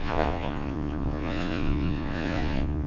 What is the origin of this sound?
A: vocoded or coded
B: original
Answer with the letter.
A